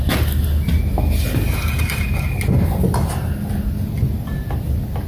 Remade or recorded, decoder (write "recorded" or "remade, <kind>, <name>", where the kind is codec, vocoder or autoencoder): recorded